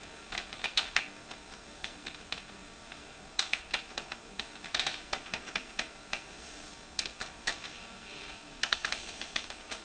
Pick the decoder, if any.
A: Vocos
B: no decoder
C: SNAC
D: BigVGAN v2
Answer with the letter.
C